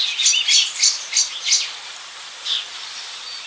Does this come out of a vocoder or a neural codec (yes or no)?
no